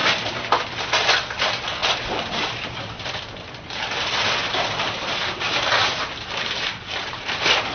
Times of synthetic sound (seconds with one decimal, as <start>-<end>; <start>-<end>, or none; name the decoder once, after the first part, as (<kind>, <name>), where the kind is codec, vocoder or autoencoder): 1.8-2.5 (vocoder, BigVGAN v2); 4.4-5.0; 5.8-7.1